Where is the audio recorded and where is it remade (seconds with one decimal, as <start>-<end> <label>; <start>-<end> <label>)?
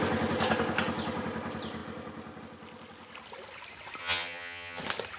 0.0-4.0 recorded; 4.0-4.8 remade; 4.8-5.2 recorded